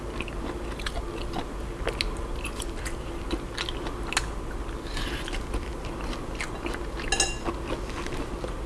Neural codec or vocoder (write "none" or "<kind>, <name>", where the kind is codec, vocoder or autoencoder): none